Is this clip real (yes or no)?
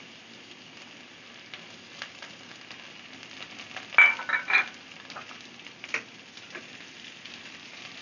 yes